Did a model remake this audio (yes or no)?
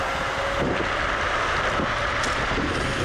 no